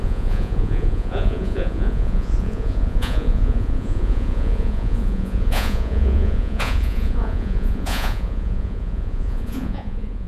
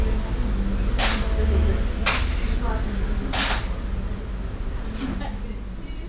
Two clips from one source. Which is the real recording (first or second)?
second